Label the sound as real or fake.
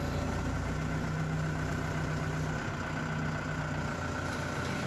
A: real